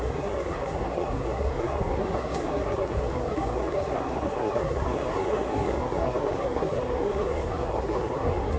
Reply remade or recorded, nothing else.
remade